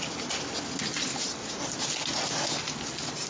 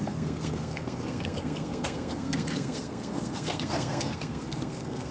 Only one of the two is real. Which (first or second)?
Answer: first